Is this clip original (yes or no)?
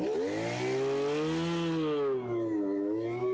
yes